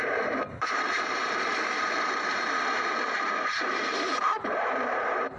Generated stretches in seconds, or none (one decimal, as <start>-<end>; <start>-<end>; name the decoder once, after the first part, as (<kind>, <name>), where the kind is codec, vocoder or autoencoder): 0.0-5.4 (vocoder, BigVGAN v2)